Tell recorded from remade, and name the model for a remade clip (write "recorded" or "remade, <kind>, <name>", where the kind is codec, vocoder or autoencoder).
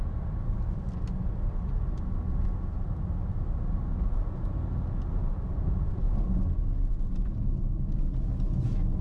recorded